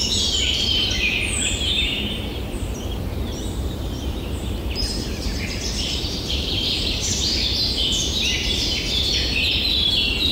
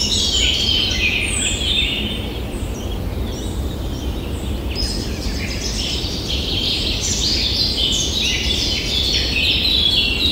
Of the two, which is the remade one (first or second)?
first